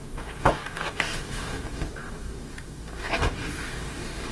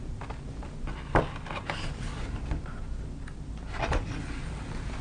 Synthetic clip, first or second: first